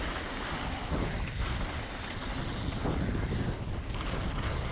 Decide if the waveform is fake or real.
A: real